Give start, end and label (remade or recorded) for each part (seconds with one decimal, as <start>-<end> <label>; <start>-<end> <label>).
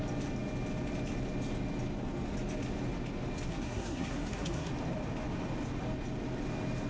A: 0.0-3.5 recorded; 3.5-4.7 remade; 4.7-6.9 recorded